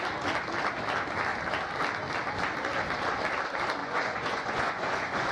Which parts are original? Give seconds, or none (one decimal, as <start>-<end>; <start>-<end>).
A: 0.0-3.8